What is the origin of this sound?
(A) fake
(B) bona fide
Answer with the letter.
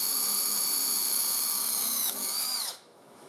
A